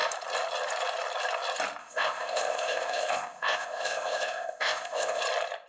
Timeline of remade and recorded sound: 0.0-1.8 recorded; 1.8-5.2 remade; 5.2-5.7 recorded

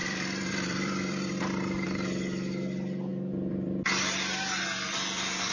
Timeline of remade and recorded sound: 0.0-1.3 remade; 1.3-5.5 recorded

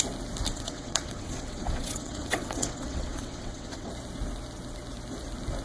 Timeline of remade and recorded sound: 0.0-0.5 recorded; 0.5-3.9 remade; 3.9-5.6 recorded

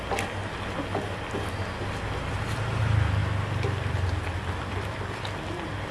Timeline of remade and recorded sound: 0.0-5.9 recorded

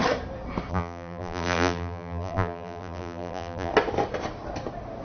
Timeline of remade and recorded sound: 0.0-0.7 recorded; 0.7-3.7 remade; 3.7-5.0 recorded